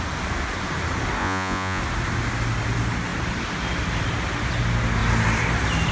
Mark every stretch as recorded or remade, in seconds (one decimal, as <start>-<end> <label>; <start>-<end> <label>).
0.0-1.2 recorded; 1.2-1.8 remade; 1.8-5.9 recorded